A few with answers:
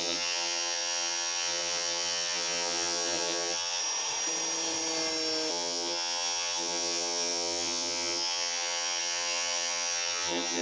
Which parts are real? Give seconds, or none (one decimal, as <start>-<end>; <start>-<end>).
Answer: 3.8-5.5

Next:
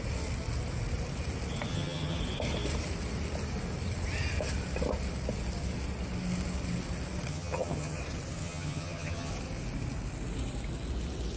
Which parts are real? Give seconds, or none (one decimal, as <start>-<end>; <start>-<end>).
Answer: 0.0-1.7; 2.2-7.3; 8.0-8.4; 9.3-11.4

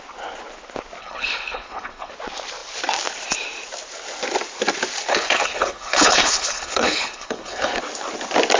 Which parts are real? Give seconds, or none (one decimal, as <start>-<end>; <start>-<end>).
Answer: 0.0-1.0; 2.1-5.1; 7.8-8.6

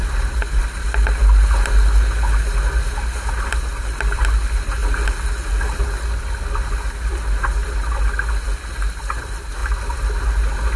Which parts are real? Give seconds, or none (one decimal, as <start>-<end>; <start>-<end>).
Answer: 0.0-10.8

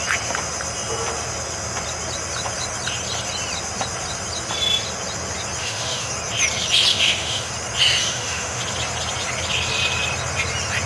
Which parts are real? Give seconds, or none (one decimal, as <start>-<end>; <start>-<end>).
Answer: 0.0-5.6; 6.1-6.9; 7.5-8.0; 8.6-10.9

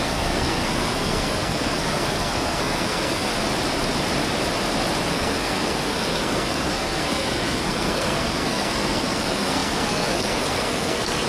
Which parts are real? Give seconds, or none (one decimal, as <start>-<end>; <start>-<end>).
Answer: 3.3-5.1

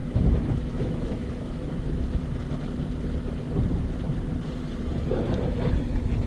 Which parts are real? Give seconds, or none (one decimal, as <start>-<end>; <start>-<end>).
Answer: 2.0-6.3

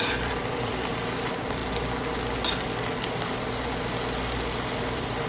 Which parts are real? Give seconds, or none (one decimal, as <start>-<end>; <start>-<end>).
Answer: 1.6-4.8